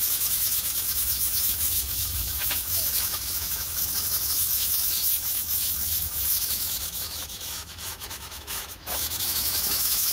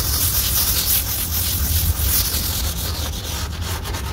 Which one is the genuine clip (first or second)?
second